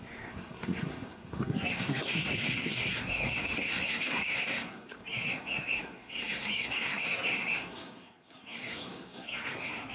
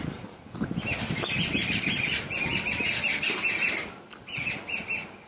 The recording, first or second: second